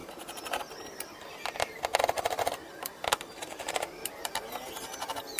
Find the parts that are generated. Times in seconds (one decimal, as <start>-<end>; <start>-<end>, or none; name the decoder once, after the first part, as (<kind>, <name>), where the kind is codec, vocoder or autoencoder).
none